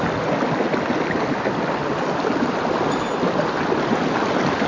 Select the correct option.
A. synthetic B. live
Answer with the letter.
B